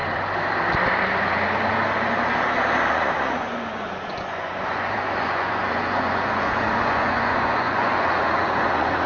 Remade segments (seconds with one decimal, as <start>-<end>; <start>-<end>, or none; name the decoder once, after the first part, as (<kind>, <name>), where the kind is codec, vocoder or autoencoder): 2.9-9.1 (vocoder, Vocos)